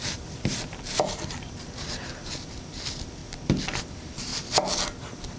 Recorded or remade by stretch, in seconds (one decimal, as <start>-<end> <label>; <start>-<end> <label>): 0.0-3.2 remade; 3.2-3.8 recorded; 3.8-4.3 remade; 4.3-5.0 recorded; 5.0-5.4 remade

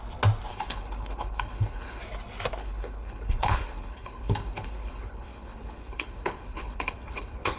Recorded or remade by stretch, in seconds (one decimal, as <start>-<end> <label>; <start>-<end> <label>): 0.0-0.5 recorded; 0.5-2.0 remade; 2.0-2.6 recorded; 2.6-7.6 remade